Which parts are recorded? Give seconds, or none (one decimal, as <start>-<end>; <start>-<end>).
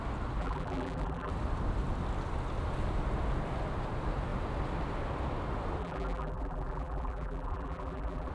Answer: 0.0-0.4; 1.3-5.8